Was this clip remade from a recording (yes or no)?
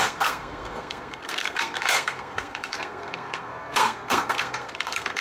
yes